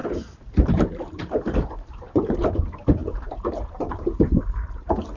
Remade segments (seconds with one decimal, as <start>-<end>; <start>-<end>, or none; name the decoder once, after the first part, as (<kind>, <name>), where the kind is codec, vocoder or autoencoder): 0.7-5.2 (vocoder, BigVGAN v2)